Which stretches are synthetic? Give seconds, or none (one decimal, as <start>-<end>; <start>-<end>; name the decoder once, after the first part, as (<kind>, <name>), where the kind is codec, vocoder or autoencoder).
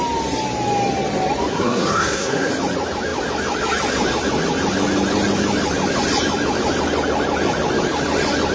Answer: 1.5-2.5 (codec, SNAC)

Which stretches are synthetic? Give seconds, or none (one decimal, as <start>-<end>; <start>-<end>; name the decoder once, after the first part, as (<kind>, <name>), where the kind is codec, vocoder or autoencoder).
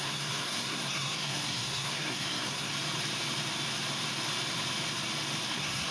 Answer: 0.0-2.7 (codec, SNAC); 5.5-5.9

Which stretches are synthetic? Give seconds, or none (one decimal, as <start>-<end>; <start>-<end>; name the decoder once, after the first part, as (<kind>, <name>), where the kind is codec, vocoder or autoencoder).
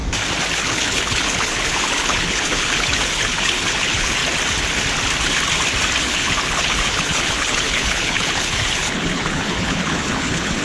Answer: 0.5-4.2 (codec, HILCodec); 6.0-10.6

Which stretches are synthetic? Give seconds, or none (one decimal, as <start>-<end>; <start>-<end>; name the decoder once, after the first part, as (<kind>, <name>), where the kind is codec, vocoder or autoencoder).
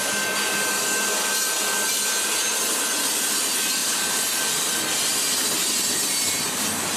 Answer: 3.8-4.4 (vocoder, BigVGAN v2)